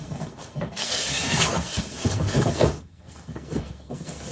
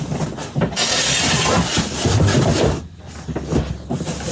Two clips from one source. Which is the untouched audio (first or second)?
second